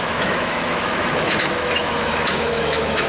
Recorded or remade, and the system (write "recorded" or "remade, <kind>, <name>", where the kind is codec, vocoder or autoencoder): remade, autoencoder, DAC-VAE